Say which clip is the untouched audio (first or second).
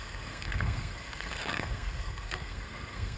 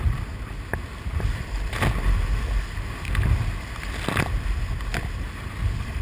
second